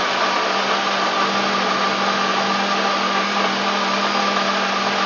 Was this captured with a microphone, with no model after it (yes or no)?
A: yes